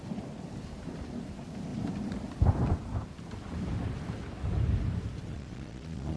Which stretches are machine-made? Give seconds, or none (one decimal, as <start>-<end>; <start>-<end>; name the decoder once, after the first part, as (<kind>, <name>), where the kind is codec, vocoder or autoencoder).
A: 5.3-6.2 (vocoder, Vocos)